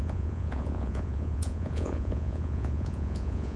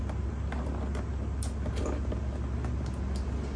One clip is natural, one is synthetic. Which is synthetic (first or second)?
first